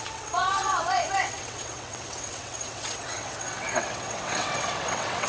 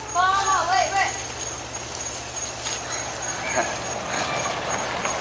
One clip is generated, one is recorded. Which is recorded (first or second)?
second